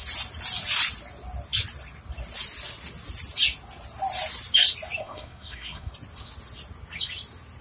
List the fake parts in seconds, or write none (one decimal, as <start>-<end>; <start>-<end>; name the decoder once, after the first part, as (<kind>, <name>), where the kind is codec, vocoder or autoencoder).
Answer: 5.0-5.9 (codec, SNAC)